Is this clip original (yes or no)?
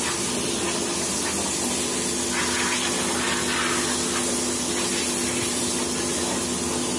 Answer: yes